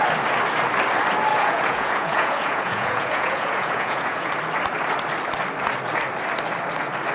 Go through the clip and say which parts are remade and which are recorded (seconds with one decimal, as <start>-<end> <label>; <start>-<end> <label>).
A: 0.0-1.3 recorded; 1.3-4.3 remade; 4.3-7.1 recorded